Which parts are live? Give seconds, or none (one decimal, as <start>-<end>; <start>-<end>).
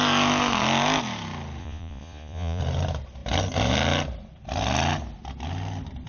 0.0-1.6; 2.6-6.1